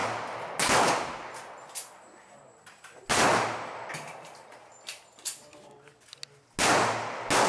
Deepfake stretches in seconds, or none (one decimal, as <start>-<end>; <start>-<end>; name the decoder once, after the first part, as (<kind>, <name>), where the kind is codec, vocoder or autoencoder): 3.9-4.7 (vocoder, BigVGAN v2)